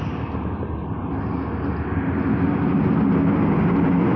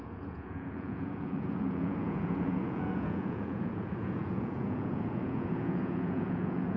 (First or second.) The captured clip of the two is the first